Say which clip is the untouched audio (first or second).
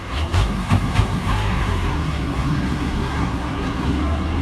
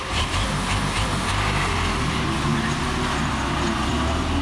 second